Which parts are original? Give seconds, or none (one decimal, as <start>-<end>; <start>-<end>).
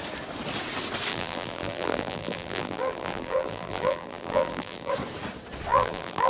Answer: 0.0-1.1; 4.9-5.7